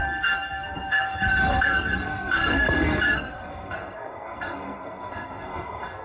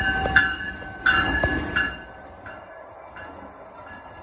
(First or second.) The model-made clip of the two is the first